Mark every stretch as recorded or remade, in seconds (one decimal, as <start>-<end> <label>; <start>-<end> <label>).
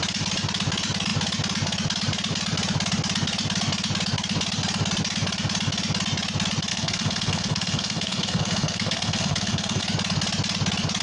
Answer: 0.0-6.7 recorded; 6.7-9.8 remade; 9.8-11.0 recorded